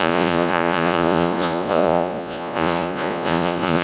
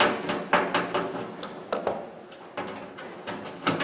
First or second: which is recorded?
second